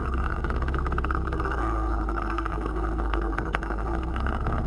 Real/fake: fake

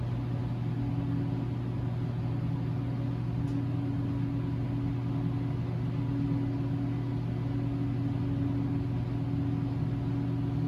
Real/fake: real